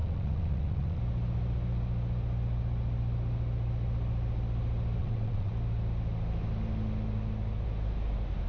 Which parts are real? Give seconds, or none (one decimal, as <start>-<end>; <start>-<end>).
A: 1.0-5.0; 5.5-8.5